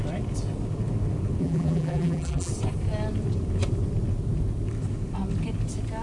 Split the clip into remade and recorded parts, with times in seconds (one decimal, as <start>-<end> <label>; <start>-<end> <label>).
0.0-1.4 recorded; 1.4-2.5 remade; 2.5-6.0 recorded